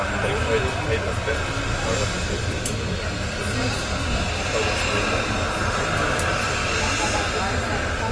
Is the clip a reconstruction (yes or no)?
no